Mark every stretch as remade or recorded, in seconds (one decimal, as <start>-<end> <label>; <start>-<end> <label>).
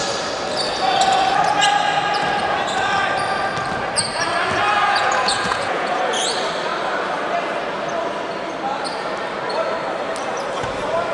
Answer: 0.0-4.8 recorded; 4.8-5.9 remade; 5.9-11.1 recorded